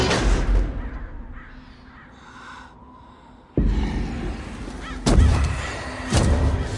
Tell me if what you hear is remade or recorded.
recorded